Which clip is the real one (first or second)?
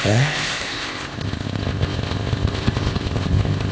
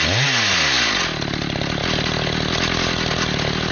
second